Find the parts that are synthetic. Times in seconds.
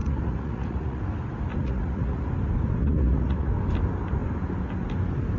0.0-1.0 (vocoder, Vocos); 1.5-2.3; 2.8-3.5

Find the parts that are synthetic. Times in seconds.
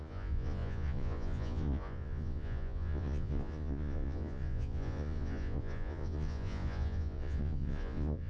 0.0-8.3 (vocoder, Vocos)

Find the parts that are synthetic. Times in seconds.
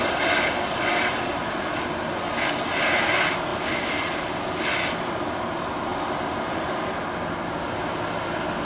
none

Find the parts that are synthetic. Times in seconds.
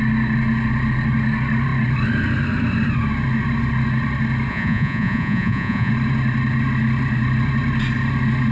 4.5-5.9 (vocoder, Vocos)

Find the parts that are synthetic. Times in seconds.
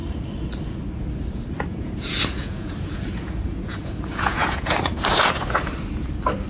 1.7-5.6 (vocoder, Vocos)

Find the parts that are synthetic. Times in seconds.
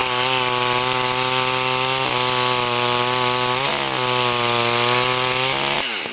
none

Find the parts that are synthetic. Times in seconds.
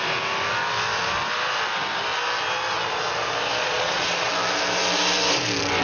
3.6-4.3 (vocoder, Vocos)